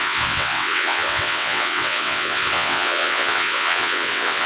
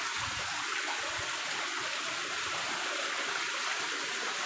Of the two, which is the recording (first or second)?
second